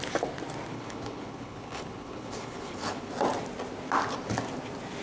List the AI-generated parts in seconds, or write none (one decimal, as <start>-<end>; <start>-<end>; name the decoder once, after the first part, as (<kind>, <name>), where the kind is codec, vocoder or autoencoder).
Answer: 0.7-3.1 (codec, HILCodec)